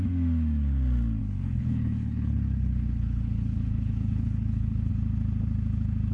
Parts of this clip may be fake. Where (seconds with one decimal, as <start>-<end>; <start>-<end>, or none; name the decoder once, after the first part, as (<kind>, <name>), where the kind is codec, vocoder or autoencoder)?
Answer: 1.2-4.9 (codec, HILCodec)